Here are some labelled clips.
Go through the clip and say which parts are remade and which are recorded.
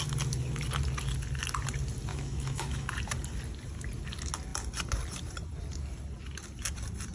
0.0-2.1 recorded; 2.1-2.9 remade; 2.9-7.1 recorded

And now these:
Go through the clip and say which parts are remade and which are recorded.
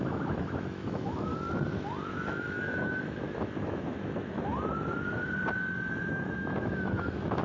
0.0-1.3 remade; 1.3-2.1 recorded; 2.1-4.5 remade; 4.5-6.1 recorded; 6.1-7.4 remade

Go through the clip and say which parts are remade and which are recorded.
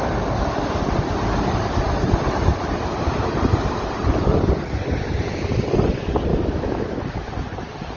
0.0-6.3 recorded; 6.3-7.0 remade; 7.0-8.0 recorded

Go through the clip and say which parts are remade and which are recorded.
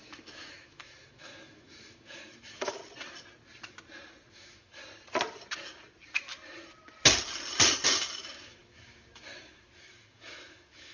0.0-2.8 remade; 2.8-4.3 recorded; 4.3-4.8 remade; 4.8-8.1 recorded; 8.1-10.9 remade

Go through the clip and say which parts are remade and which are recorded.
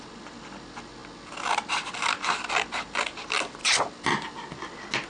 0.0-5.1 recorded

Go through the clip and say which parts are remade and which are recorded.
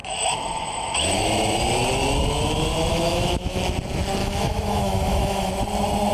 0.0-1.3 remade; 1.3-2.9 recorded; 2.9-3.6 remade; 3.6-4.2 recorded; 4.2-5.5 remade; 5.5-6.1 recorded